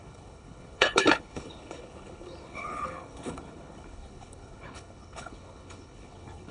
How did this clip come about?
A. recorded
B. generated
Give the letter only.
B